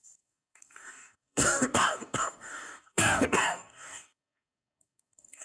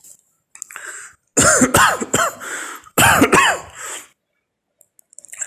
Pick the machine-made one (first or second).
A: first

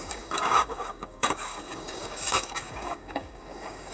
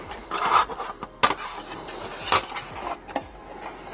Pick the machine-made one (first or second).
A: first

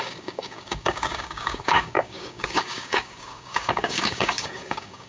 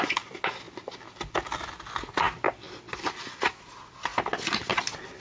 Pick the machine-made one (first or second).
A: first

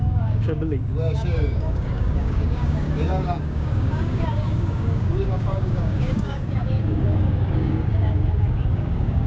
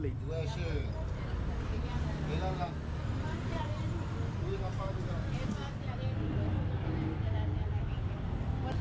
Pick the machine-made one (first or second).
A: first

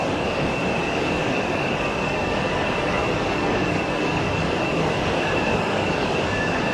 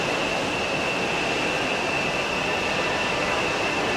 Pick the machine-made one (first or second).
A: first